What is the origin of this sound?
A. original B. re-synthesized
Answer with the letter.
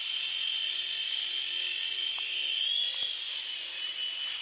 A